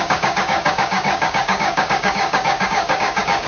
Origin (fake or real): fake